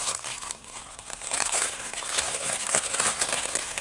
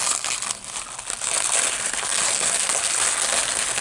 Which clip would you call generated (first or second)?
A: first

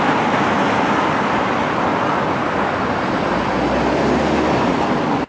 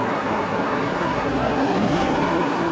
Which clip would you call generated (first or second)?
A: second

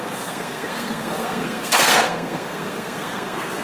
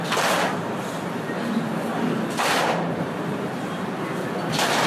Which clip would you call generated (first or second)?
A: first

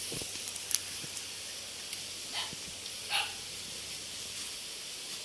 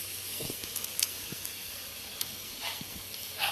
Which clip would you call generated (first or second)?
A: second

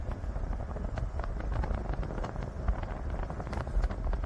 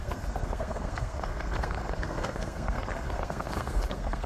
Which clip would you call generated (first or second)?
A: second